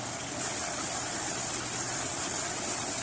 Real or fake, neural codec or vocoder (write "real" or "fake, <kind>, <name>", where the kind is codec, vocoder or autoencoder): real